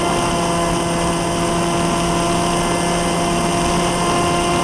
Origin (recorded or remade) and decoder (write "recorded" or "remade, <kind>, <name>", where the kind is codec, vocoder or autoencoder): recorded